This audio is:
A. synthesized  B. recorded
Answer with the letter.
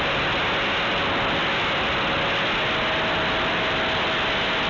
B